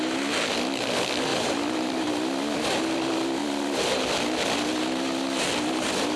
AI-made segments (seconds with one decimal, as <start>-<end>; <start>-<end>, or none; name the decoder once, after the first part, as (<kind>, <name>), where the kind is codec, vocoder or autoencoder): 1.3-2.1 (vocoder, BigVGAN v2)